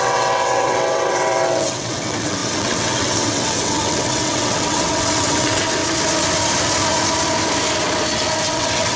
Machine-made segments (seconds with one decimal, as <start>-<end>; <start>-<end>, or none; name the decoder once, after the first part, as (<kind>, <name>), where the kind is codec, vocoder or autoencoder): 0.0-5.8 (vocoder, WaveNeXt); 8.5-9.0

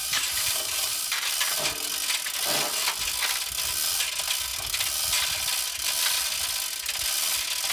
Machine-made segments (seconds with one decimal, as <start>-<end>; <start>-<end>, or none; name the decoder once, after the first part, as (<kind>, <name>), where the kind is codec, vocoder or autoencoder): 0.0-1.3 (vocoder, BigVGAN v2)

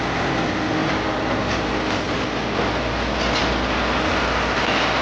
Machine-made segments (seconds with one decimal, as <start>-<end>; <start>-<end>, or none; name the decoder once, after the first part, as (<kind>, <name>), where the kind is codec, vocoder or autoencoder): 0.8-1.7 (vocoder, BigVGAN v2)

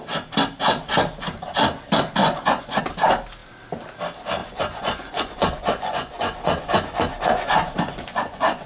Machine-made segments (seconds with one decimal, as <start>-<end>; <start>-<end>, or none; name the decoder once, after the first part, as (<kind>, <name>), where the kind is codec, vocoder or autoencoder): 2.2-2.8 (vocoder, Vocos); 4.4-8.7

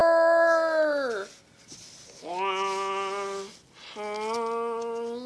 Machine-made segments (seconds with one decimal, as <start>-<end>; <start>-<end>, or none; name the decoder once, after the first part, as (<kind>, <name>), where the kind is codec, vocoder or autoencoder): none

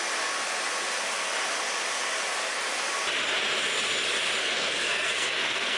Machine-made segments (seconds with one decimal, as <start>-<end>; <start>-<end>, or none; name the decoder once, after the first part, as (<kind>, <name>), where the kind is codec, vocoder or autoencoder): 4.4-5.8 (codec, SNAC)